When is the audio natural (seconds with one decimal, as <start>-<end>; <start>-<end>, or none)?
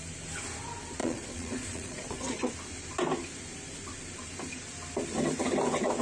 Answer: 0.0-1.0; 2.5-6.0